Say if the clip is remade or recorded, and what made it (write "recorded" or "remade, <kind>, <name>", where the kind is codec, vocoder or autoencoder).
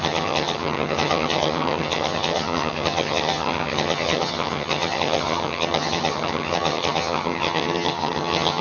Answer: remade, vocoder, HiFi-GAN